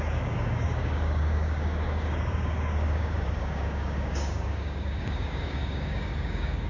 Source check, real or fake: fake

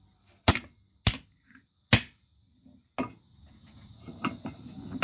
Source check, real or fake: real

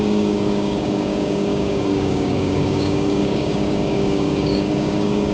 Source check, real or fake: fake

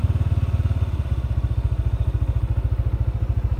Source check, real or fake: real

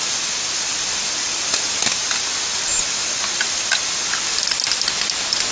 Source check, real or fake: real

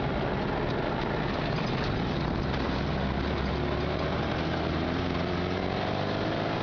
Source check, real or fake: real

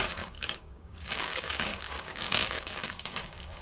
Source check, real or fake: fake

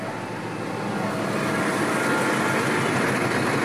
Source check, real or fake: real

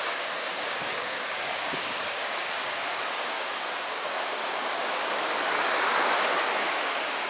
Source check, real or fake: fake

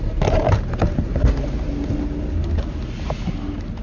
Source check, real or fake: real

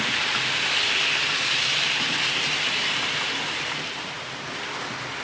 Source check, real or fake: real